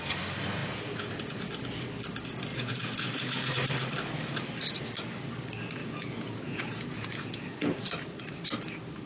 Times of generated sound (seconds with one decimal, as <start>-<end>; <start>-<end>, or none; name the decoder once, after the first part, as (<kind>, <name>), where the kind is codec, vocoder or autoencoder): 0.6-1.5 (vocoder, Vocos); 2.5-3.5; 5.8-7.9